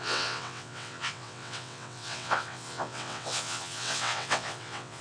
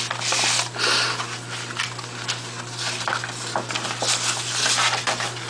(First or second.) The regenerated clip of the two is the first